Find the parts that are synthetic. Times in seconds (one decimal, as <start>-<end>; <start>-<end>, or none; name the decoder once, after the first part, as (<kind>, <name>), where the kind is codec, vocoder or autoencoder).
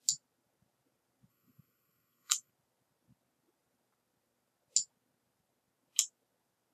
1.3-2.5 (codec, SNAC)